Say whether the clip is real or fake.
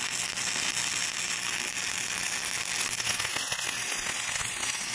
real